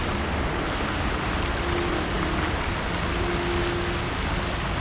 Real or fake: real